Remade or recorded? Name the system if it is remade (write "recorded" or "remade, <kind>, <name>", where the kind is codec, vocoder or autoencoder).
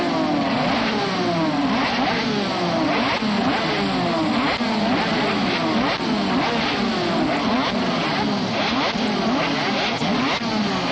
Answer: recorded